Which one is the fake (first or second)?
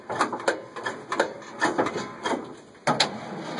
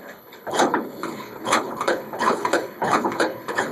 second